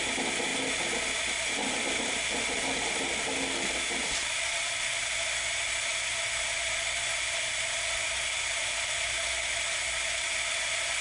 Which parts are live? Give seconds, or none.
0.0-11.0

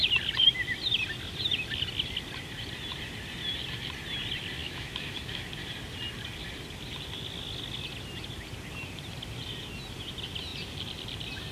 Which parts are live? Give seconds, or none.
0.0-4.6; 5.5-11.5

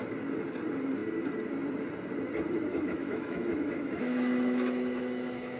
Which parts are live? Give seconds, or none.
0.0-2.7

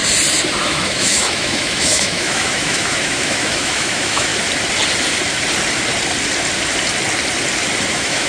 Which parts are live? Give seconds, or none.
0.0-0.6; 4.3-7.9